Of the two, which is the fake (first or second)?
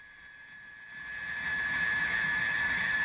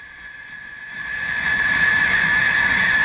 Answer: second